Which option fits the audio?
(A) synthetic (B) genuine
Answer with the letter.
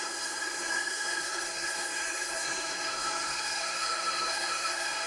A